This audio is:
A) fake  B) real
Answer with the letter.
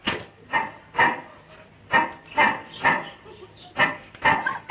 B